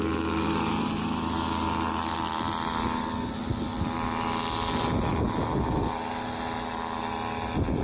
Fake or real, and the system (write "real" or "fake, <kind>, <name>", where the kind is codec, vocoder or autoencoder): real